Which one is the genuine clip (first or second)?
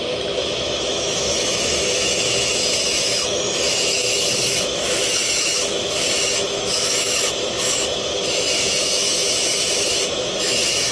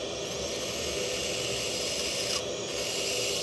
second